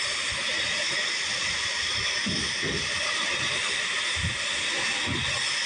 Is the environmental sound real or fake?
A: real